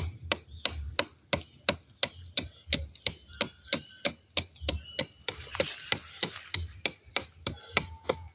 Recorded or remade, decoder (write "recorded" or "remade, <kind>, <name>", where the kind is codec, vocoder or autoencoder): recorded